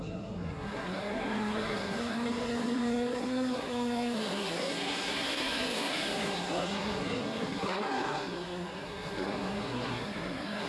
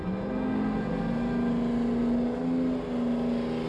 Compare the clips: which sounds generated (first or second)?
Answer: first